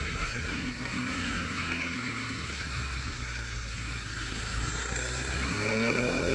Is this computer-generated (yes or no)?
yes